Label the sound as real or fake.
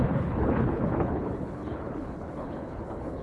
fake